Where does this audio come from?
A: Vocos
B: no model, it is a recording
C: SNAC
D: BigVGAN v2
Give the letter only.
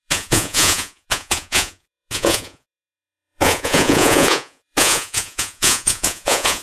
A